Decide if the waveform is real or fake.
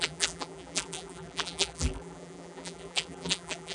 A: fake